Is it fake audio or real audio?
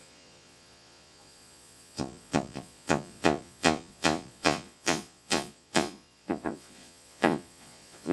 fake